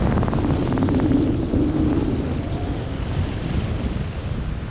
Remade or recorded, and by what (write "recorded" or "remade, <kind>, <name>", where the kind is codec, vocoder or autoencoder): recorded